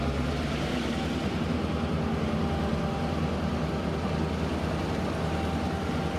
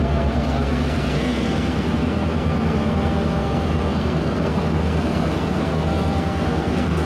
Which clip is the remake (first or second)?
second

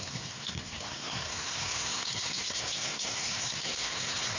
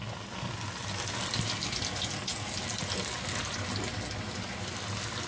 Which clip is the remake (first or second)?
first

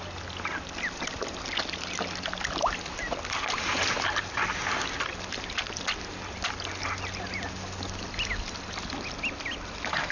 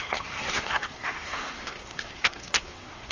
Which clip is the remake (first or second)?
second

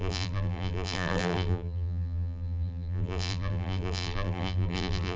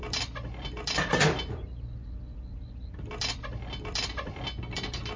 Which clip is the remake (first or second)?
first